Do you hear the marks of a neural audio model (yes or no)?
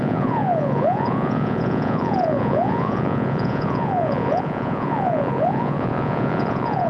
yes